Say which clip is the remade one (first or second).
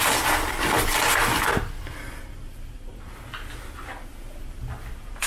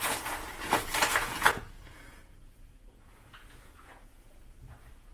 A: second